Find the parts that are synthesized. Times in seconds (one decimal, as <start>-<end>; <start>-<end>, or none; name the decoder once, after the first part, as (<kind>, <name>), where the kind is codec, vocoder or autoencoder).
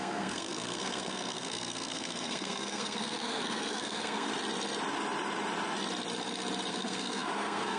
0.0-4.3 (codec, SNAC); 6.7-7.8